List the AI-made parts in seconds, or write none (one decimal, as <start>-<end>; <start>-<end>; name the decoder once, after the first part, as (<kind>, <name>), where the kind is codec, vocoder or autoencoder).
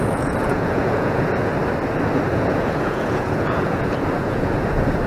0.0-1.5 (vocoder, Vocos); 2.3-5.1